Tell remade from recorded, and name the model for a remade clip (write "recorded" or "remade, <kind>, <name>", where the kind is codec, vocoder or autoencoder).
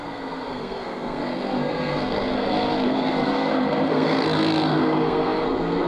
remade, codec, SNAC